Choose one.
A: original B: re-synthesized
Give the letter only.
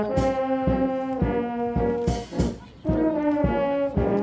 A